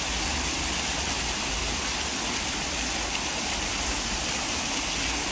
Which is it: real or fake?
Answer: real